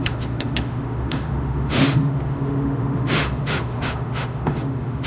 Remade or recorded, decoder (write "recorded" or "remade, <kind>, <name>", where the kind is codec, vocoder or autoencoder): remade, autoencoder, DAC-VAE